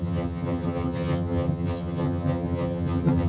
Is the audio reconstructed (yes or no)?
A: yes